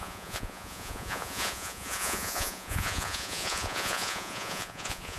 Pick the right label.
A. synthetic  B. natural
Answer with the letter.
A